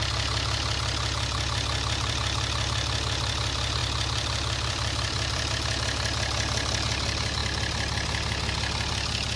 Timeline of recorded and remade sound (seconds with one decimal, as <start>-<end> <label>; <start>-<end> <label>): 0.0-3.8 recorded; 3.8-5.5 remade; 5.5-9.4 recorded